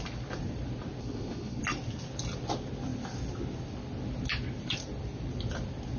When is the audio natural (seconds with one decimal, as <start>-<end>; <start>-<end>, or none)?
0.0-1.0; 1.6-6.0